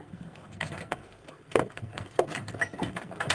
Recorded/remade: remade